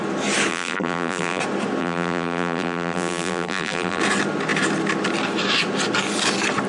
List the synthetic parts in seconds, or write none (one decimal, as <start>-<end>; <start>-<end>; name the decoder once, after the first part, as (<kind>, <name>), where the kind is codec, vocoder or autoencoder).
0.5-1.4 (vocoder, BigVGAN v2); 1.8-4.0